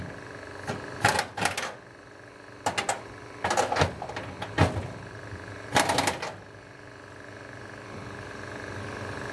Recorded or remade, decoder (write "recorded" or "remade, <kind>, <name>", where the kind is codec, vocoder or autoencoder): recorded